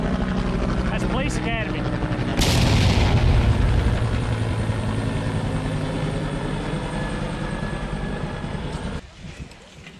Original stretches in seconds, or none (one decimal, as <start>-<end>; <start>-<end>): 0.0-10.0

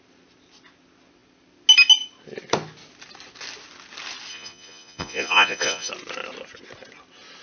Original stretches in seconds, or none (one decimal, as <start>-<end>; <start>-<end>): 0.0-4.3; 5.9-7.4

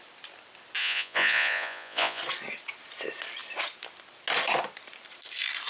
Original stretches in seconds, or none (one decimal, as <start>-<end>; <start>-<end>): 0.0-0.8; 2.2-5.7